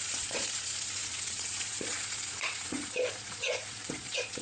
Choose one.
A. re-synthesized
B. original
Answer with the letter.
A